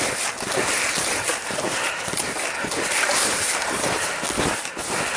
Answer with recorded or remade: recorded